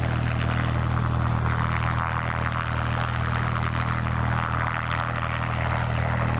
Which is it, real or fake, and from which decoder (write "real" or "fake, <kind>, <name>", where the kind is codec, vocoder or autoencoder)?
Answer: real